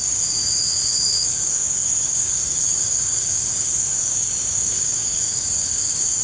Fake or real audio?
fake